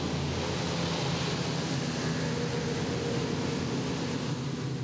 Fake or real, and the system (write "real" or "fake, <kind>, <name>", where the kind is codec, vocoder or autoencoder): real